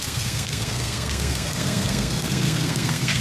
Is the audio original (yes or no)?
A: no